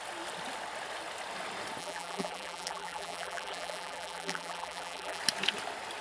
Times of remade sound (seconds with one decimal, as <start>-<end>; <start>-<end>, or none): 1.8-5.2